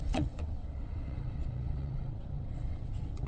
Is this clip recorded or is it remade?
remade